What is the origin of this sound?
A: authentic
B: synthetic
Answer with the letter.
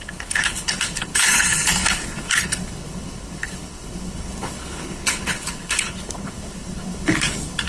B